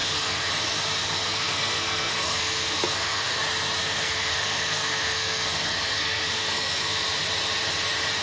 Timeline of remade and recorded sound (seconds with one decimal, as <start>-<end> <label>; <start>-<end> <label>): 0.0-0.5 remade; 0.5-1.0 recorded; 1.0-3.4 remade; 3.4-3.8 recorded; 3.8-7.0 remade; 7.0-8.2 recorded